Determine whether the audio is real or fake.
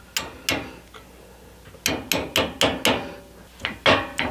real